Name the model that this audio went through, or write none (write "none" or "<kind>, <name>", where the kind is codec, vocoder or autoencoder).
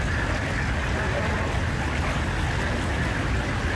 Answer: none